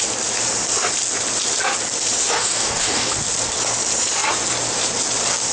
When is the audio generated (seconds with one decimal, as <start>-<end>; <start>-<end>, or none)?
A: 2.2-3.1